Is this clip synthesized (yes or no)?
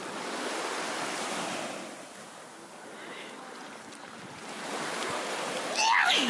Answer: no